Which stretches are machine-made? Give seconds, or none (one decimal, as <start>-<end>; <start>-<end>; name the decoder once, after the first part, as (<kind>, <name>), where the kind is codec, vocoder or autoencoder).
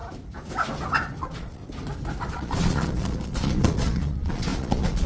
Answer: 1.2-1.6 (vocoder, Vocos); 2.3-5.1